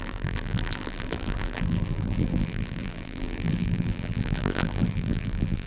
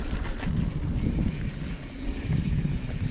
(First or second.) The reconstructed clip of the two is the first